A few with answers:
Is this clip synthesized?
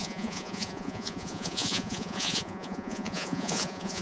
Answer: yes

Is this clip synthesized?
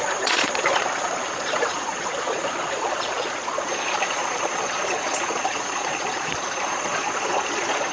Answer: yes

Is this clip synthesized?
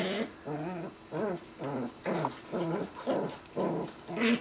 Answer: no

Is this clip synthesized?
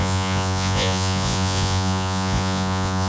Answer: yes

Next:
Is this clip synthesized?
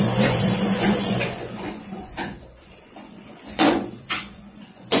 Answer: yes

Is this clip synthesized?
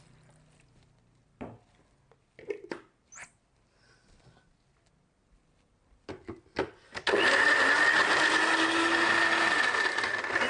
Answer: no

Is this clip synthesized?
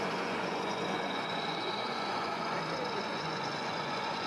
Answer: yes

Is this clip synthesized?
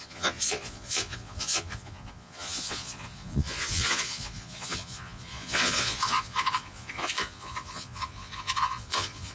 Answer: yes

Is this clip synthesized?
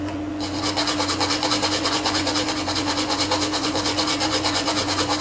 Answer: yes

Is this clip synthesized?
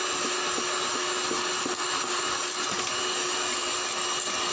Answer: no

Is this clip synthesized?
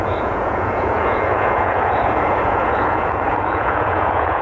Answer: yes